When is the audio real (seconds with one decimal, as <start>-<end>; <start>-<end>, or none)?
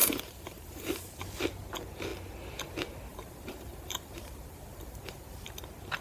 1.2-3.1; 5.6-6.0